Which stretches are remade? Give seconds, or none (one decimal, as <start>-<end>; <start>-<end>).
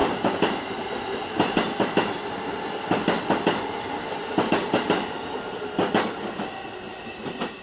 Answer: none